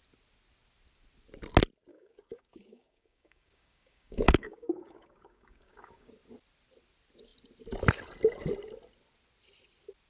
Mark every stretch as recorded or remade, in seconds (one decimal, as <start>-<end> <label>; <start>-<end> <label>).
0.0-1.9 recorded; 1.9-6.1 remade; 6.1-10.1 recorded